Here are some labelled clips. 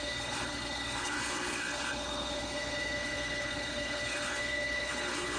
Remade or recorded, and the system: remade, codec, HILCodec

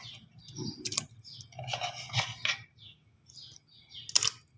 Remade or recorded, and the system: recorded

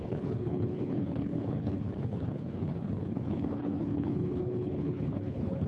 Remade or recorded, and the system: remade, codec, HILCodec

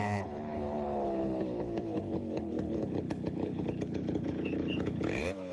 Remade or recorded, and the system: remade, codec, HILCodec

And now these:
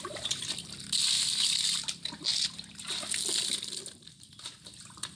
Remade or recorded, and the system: recorded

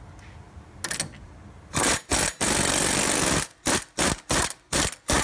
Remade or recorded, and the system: recorded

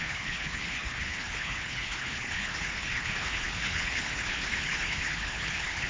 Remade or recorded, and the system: remade, codec, HILCodec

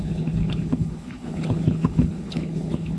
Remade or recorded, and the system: remade, codec, HILCodec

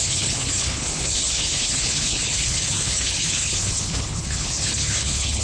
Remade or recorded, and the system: remade, codec, HILCodec